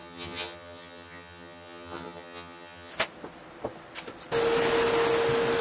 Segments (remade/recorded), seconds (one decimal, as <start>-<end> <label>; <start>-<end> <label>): 0.0-2.9 remade; 2.9-5.6 recorded